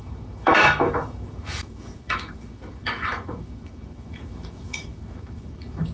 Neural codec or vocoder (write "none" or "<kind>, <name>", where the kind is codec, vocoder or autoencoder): autoencoder, DAC-VAE